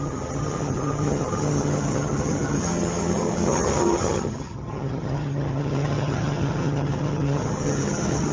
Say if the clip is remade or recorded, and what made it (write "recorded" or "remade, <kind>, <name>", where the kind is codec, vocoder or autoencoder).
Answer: remade, vocoder, HiFi-GAN